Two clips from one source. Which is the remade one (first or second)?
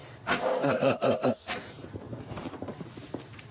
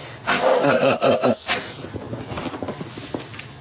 first